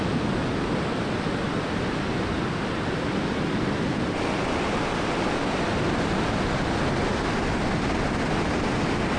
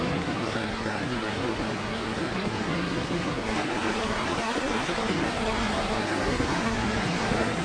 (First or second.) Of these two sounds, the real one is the first